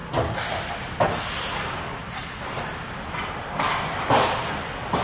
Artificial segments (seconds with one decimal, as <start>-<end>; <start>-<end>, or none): none